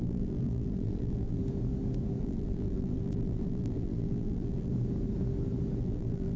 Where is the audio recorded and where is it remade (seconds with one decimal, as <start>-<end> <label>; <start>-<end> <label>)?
0.0-1.4 remade; 1.4-2.2 recorded; 2.2-4.7 remade; 4.7-5.8 recorded; 5.8-6.4 remade